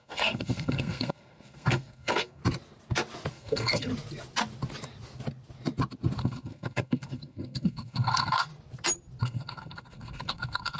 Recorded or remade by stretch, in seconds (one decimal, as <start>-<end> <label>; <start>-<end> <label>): 0.0-2.4 remade; 2.4-3.3 recorded; 3.3-3.9 remade; 3.9-6.2 recorded; 6.2-8.5 remade; 8.5-9.2 recorded; 9.2-10.8 remade